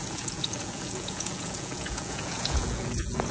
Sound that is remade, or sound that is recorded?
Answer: remade